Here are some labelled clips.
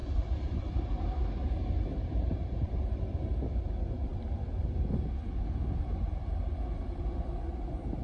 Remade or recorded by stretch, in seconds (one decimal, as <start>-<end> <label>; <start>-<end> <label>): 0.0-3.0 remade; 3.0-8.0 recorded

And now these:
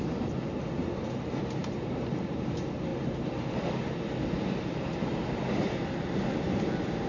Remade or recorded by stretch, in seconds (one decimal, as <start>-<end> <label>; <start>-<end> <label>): 0.0-1.6 recorded; 1.6-2.2 remade; 2.2-7.1 recorded

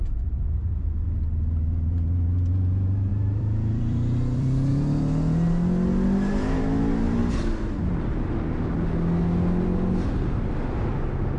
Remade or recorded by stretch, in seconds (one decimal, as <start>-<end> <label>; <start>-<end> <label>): 0.0-3.1 recorded; 3.1-4.7 remade; 4.7-7.2 recorded; 7.2-7.9 remade; 7.9-11.4 recorded

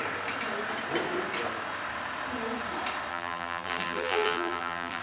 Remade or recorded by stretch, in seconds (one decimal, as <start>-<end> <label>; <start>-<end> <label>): 0.0-3.1 recorded; 3.1-5.0 remade